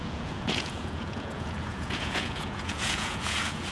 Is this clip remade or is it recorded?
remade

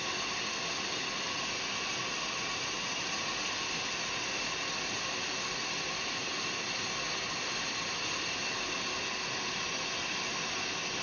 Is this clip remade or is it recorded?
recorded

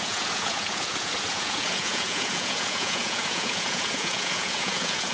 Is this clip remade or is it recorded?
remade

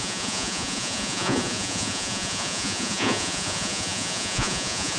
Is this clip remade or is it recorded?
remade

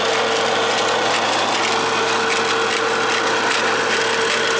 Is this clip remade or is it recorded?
recorded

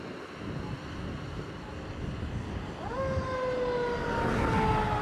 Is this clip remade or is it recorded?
recorded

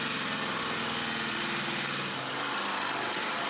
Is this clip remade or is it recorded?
recorded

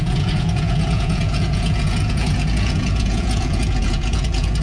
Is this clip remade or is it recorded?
remade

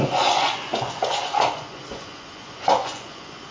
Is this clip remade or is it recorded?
remade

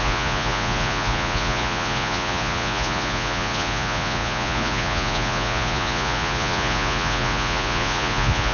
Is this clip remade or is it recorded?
remade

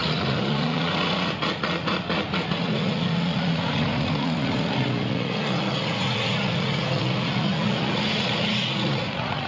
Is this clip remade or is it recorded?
remade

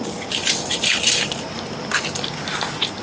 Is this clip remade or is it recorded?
recorded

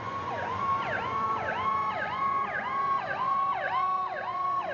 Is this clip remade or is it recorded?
remade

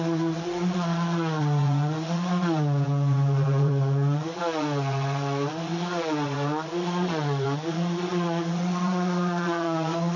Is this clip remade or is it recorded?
remade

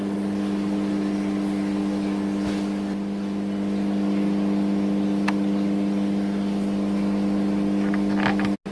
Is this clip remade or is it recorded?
recorded